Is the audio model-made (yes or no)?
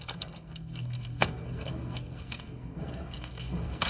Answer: yes